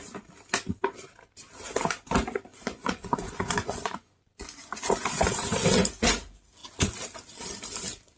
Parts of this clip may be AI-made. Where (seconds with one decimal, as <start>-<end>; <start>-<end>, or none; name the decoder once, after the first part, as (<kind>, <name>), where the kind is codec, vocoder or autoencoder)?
2.5-4.8 (vocoder, Vocos)